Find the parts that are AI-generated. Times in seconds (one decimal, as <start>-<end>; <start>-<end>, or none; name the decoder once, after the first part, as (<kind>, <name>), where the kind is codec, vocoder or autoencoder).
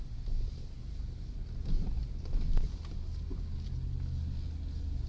none